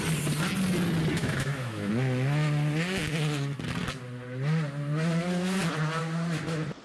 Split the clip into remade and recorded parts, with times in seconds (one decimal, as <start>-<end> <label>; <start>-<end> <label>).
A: 0.0-1.2 recorded; 1.2-1.9 remade; 1.9-6.8 recorded